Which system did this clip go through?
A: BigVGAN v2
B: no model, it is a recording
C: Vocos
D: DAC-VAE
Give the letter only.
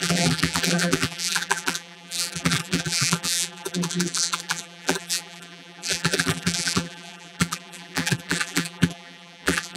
A